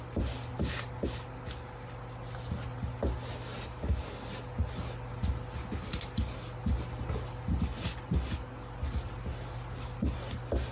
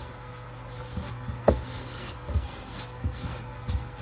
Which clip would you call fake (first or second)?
second